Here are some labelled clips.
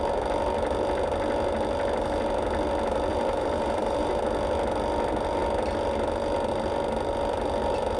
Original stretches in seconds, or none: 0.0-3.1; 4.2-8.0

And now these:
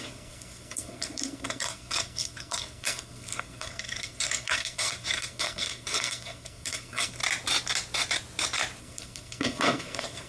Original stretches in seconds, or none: 7.2-8.8

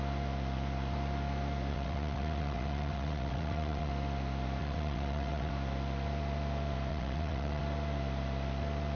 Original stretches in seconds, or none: 0.0-1.7; 3.9-4.6; 5.5-6.9; 7.6-9.0

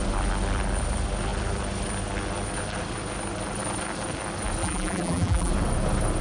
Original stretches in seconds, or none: 0.0-4.6; 5.5-6.2

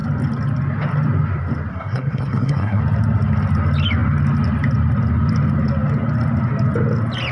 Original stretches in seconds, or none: 0.0-1.7; 2.8-7.3

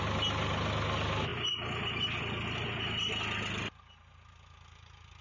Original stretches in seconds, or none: 0.0-5.2

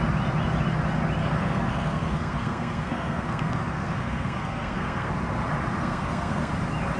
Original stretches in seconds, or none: 0.0-1.2; 5.1-5.8; 6.5-7.0

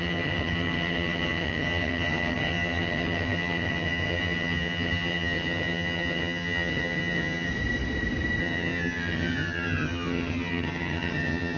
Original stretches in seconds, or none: 7.5-8.4